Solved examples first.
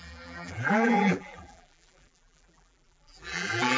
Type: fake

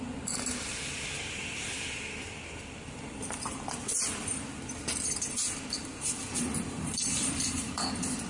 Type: fake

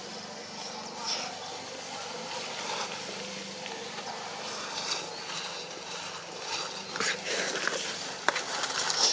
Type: real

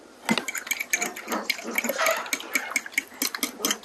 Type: real